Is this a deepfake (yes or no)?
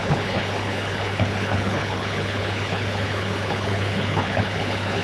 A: yes